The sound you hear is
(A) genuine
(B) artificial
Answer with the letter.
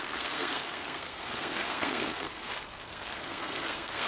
B